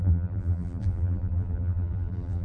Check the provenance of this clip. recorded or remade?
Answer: remade